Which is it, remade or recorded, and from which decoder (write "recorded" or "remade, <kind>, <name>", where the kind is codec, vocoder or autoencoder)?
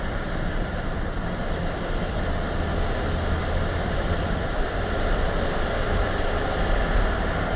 recorded